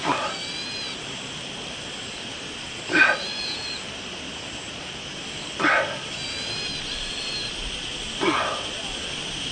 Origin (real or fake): real